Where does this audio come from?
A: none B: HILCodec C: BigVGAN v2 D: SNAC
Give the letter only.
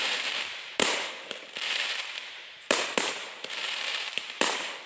C